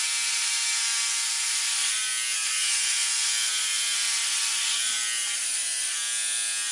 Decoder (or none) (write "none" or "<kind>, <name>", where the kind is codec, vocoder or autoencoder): none